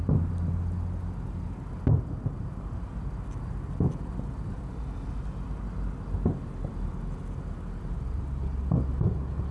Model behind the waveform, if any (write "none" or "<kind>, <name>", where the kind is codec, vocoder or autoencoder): none